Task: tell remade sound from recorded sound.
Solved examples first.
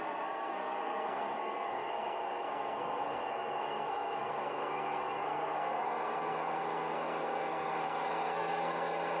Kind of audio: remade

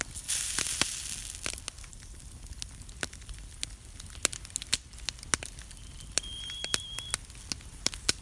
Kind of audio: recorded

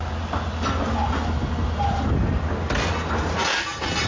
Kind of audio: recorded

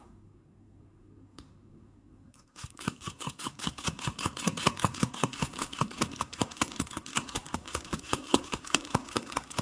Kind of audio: remade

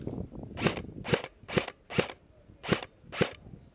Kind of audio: recorded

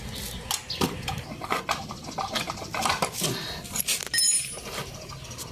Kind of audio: recorded